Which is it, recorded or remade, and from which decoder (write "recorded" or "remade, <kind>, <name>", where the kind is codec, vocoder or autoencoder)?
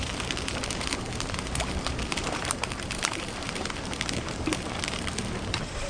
remade, vocoder, BigVGAN v2